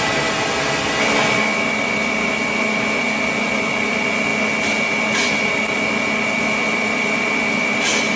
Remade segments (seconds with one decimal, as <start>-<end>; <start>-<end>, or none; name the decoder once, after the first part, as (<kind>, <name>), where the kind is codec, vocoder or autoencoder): none